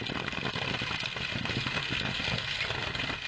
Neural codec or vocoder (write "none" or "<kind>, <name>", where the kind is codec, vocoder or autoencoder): none